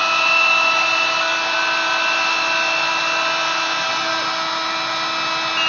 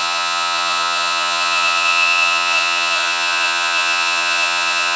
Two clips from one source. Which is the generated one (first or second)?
second